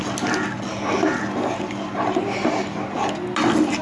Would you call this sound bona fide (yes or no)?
yes